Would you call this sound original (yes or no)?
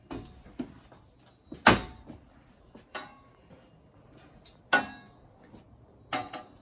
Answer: yes